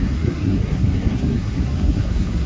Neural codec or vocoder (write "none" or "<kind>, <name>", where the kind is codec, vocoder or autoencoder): codec, SNAC